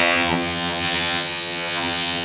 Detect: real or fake fake